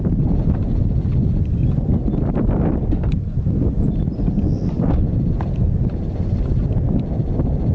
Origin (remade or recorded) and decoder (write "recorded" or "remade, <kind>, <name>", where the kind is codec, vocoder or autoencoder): recorded